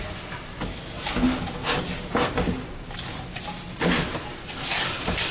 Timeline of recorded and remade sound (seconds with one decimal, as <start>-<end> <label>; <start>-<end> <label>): 0.0-5.3 recorded